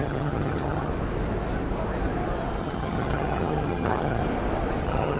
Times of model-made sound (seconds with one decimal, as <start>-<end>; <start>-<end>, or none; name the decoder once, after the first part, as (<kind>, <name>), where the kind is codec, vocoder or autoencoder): 0.0-0.9 (vocoder, HiFi-GAN); 2.6-4.2; 4.8-5.2